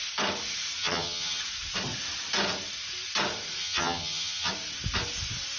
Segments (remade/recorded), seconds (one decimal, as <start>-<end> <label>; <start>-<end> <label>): 0.0-0.8 recorded; 0.8-1.4 remade; 1.4-3.6 recorded; 3.6-4.5 remade; 4.5-5.6 recorded